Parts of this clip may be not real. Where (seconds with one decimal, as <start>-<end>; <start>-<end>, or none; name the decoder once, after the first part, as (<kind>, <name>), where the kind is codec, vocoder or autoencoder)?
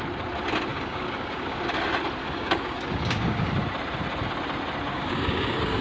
0.7-1.6 (codec, DAC); 2.2-3.5; 4.9-5.8